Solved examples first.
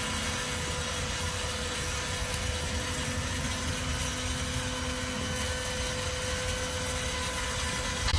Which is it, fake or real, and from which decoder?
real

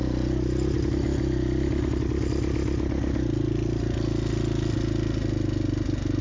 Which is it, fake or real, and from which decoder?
real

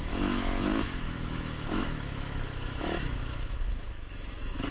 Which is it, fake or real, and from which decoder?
fake, autoencoder, DAC-VAE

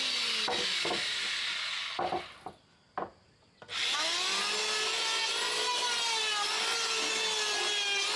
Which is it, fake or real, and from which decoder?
real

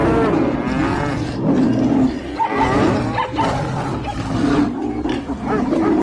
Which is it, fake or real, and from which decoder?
real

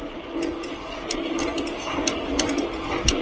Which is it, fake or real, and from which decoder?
real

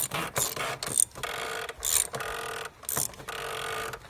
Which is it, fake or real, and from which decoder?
real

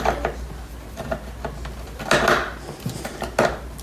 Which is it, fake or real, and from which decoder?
real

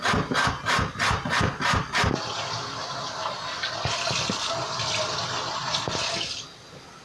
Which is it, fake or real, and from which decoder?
real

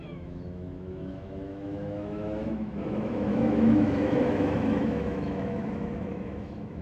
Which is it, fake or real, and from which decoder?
fake, autoencoder, DAC-VAE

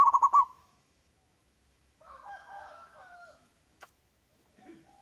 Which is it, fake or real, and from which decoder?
fake, autoencoder, DAC-VAE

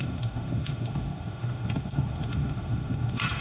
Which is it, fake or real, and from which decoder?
fake, autoencoder, DAC-VAE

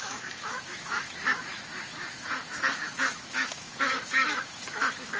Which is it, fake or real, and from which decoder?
fake, autoencoder, DAC-VAE